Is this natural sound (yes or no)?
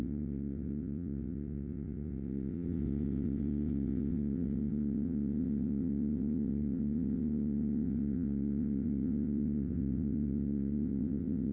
no